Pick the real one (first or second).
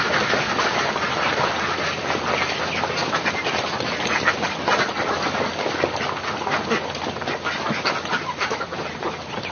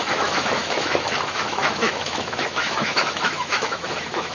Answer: first